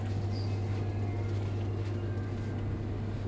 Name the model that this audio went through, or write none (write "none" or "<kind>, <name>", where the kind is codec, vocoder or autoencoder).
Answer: none